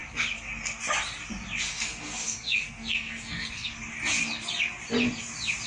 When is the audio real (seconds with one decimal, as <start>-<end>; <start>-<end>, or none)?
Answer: 0.0-1.7; 3.7-5.7